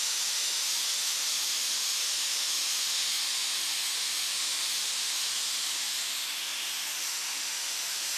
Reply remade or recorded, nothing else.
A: remade